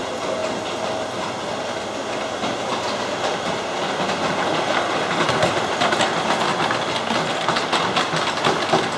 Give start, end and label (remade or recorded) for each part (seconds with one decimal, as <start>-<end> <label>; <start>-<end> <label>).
0.0-9.0 recorded